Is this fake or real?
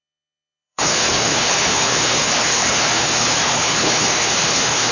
fake